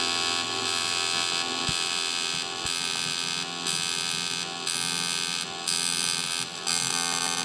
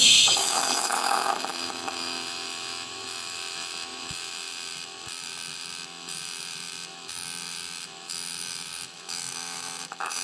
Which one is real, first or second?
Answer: first